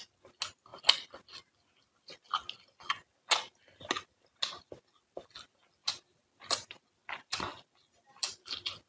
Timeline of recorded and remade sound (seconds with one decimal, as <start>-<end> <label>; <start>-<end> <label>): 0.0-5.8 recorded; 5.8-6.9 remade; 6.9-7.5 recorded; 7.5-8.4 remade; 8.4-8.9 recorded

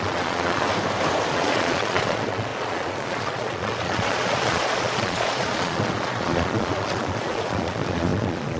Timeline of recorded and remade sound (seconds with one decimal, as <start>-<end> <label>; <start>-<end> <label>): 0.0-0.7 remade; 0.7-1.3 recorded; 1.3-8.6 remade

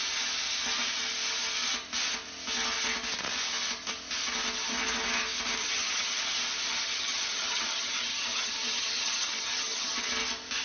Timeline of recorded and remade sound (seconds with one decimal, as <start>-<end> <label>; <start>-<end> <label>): 0.0-5.6 recorded; 5.6-6.2 remade; 6.2-6.7 recorded; 6.7-10.1 remade; 10.1-10.6 recorded

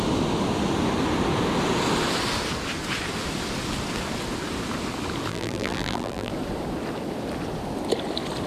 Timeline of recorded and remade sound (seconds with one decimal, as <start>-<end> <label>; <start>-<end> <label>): 0.0-5.3 recorded; 5.3-6.3 remade; 6.3-8.5 recorded

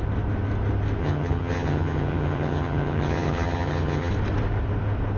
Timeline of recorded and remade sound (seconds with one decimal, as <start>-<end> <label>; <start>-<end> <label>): 0.0-1.0 recorded; 1.0-4.1 remade; 4.1-5.2 recorded